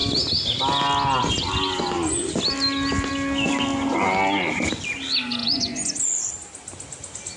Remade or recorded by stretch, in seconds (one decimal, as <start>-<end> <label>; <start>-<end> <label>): 0.0-5.4 recorded; 5.4-6.3 remade; 6.3-7.4 recorded